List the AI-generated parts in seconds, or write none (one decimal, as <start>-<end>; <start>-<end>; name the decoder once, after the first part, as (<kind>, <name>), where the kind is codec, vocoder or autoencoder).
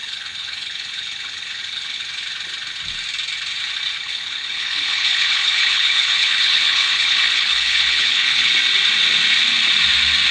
0.0-2.0 (codec, HILCodec); 4.0-8.5